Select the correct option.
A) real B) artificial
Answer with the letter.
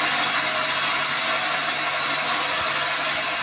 A